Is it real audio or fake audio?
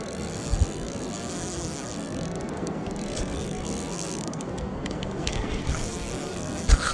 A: fake